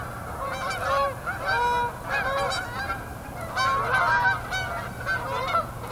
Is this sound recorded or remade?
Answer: recorded